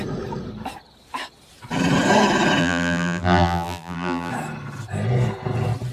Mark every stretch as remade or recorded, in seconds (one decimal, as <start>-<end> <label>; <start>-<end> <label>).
0.0-2.6 recorded; 2.6-4.3 remade; 4.3-5.9 recorded

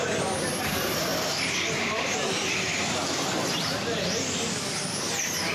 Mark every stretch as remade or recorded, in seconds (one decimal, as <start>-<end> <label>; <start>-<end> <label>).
0.0-1.1 remade; 1.1-1.8 recorded; 1.8-5.5 remade

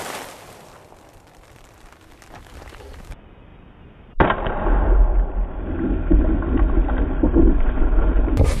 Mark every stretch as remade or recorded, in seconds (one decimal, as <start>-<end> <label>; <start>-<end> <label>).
0.0-8.6 recorded

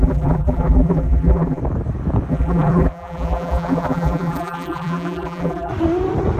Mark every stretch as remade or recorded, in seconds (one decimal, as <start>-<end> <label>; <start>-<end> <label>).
0.0-1.6 remade; 1.6-2.3 recorded; 2.3-5.7 remade; 5.7-6.4 recorded

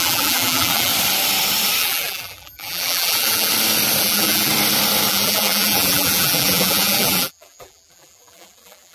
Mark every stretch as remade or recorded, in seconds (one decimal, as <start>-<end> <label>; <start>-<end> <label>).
0.0-0.9 remade; 0.9-1.8 recorded; 1.8-3.5 remade; 3.5-4.0 recorded; 4.0-4.5 remade; 4.5-5.1 recorded; 5.1-8.9 remade